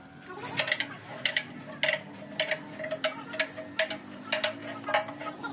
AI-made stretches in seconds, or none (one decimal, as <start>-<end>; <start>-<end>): 1.0-1.5